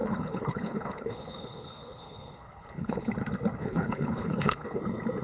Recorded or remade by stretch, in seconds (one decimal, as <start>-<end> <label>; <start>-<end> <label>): 0.0-3.1 remade; 3.1-3.6 recorded; 3.6-4.8 remade; 4.8-5.2 recorded